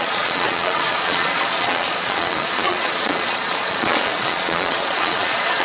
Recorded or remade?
remade